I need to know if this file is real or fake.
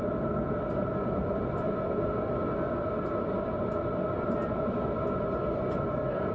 real